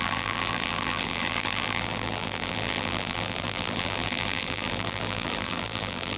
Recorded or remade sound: remade